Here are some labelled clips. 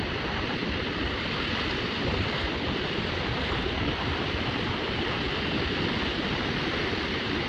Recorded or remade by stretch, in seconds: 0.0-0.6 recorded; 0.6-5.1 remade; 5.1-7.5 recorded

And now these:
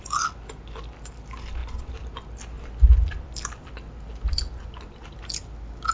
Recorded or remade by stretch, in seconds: 0.0-5.9 recorded

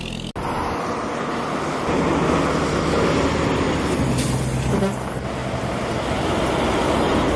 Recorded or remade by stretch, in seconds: 0.0-7.4 recorded